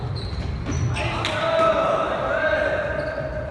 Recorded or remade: recorded